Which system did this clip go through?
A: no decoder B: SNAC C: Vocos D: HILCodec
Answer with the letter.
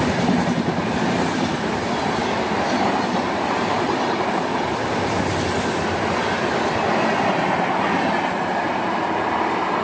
A